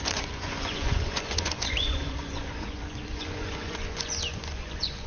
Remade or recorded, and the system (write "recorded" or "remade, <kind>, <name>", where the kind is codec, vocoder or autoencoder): remade, vocoder, Vocos